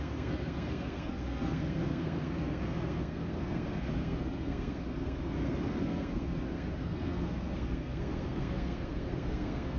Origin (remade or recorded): remade